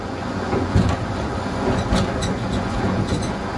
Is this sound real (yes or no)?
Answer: no